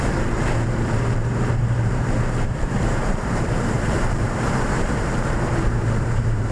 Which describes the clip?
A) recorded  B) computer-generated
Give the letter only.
B